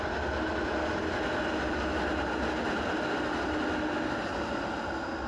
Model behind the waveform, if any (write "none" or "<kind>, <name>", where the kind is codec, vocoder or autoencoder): none